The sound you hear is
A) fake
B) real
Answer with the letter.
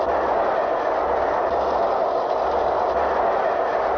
B